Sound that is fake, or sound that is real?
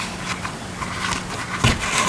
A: real